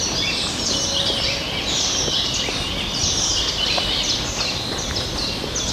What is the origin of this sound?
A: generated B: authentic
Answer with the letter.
B